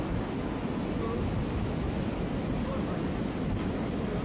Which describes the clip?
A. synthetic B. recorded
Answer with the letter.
B